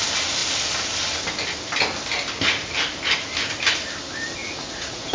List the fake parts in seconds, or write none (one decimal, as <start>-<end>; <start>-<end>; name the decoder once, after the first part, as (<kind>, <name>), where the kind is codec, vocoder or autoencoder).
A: 4.4-5.1 (vocoder, Vocos)